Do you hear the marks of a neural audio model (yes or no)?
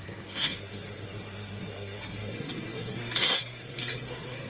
yes